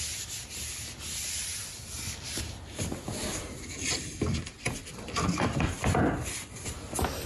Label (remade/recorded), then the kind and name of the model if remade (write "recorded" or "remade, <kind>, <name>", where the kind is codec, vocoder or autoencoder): recorded